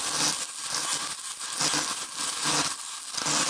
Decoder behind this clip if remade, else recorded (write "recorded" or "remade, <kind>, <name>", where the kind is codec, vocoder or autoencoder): recorded